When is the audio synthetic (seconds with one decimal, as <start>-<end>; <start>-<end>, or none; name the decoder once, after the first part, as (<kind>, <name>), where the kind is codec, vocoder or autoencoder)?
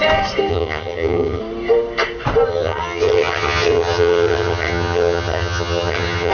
0.5-1.4 (vocoder, HiFi-GAN); 2.5-6.3